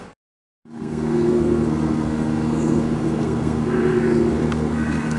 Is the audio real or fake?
fake